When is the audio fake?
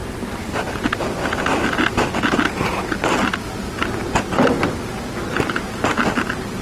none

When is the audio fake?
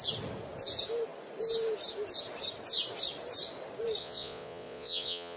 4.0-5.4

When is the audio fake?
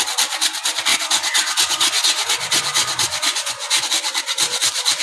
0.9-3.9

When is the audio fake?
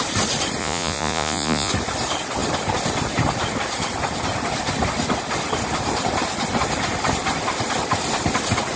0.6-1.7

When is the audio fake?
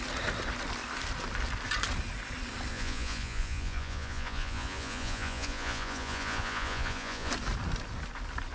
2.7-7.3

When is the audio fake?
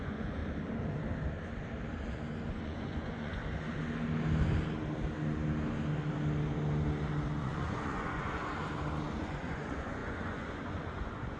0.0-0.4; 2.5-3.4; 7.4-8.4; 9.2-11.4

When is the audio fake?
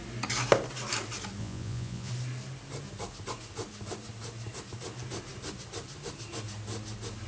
1.4-2.1